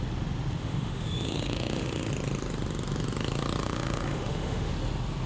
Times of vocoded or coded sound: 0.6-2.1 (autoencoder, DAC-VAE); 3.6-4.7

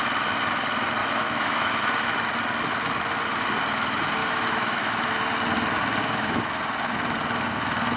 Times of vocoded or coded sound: 1.0-1.7 (autoencoder, DAC-VAE); 4.2-5.1; 6.0-6.6